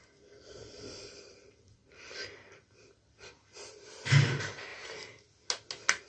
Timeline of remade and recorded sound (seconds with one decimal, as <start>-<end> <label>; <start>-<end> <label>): 0.0-4.7 remade; 4.7-6.1 recorded